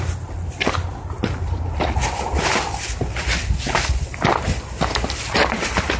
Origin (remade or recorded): recorded